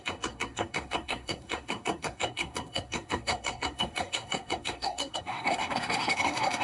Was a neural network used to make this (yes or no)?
yes